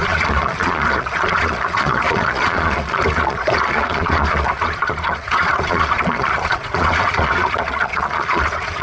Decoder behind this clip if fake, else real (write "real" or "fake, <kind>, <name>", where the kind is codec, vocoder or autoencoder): fake, vocoder, Vocos